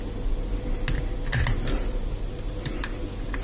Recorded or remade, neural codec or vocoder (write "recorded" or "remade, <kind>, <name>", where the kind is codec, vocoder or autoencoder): recorded